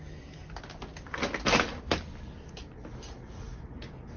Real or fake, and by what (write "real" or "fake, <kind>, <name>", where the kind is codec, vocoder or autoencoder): real